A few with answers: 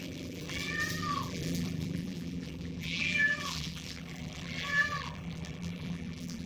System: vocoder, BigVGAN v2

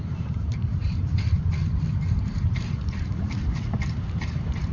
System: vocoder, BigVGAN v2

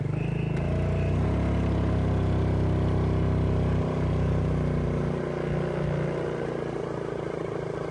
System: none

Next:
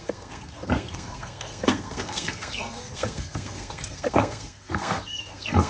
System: codec, SNAC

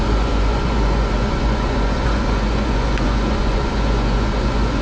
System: vocoder, Vocos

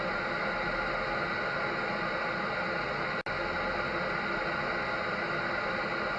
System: none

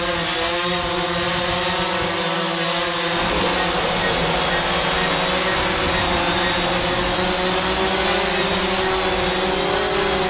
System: none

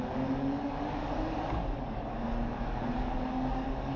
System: codec, DAC